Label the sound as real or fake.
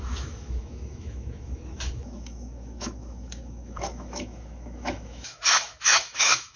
fake